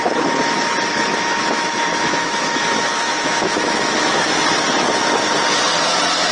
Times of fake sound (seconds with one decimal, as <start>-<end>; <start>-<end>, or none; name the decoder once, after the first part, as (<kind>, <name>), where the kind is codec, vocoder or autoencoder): 0.9-4.1 (autoencoder, DAC-VAE)